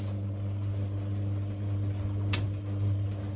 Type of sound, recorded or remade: recorded